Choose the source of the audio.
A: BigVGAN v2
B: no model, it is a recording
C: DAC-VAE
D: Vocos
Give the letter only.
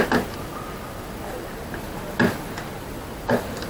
B